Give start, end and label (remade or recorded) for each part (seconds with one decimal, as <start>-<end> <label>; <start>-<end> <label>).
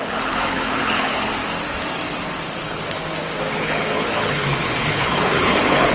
0.0-1.3 remade; 1.3-2.6 recorded; 2.6-3.0 remade; 3.0-3.5 recorded; 3.5-5.9 remade